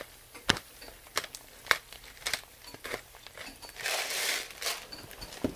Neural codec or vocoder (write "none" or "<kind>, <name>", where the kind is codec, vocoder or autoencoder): vocoder, BigVGAN v2